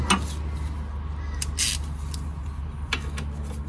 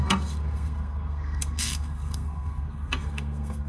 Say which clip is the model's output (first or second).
second